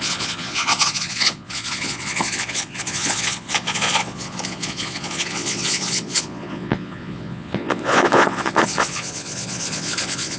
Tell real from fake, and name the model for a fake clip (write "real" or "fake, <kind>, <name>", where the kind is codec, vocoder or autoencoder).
fake, vocoder, Vocos